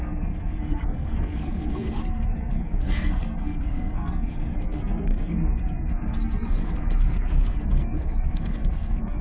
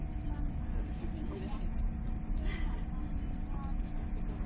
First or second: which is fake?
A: first